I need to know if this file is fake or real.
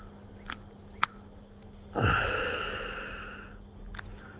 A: real